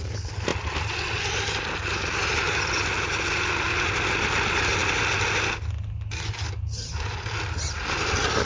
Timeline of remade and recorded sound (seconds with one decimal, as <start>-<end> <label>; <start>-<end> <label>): 0.0-8.4 recorded